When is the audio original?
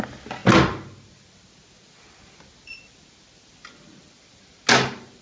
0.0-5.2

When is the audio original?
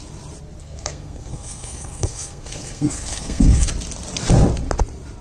0.0-0.6; 3.7-5.2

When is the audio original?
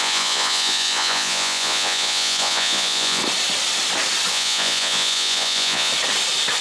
3.2-4.3; 5.9-6.6